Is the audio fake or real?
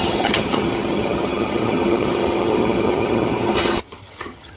fake